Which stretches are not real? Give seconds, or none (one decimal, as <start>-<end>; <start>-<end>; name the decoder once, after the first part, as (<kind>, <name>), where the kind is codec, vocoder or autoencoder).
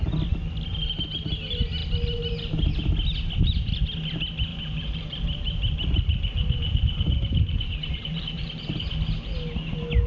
4.5-8.6 (vocoder, BigVGAN v2)